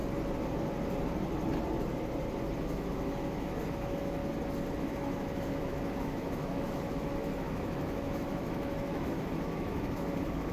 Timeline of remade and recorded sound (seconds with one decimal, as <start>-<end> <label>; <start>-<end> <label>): 0.0-2.6 recorded; 2.6-4.2 remade; 4.2-4.8 recorded; 4.8-10.5 remade